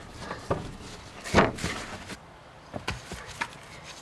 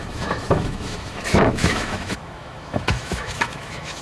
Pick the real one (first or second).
first